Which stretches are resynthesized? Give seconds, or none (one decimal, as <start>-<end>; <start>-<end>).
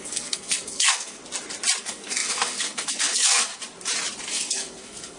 0.0-1.2; 1.8-3.5; 4.3-5.2